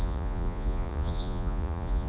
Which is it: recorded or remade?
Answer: remade